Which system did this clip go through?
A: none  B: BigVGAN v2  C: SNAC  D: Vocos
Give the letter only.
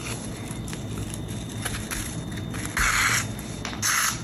A